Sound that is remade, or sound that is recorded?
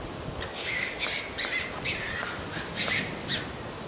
remade